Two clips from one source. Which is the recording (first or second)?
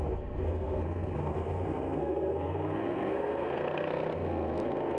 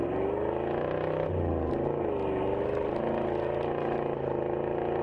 second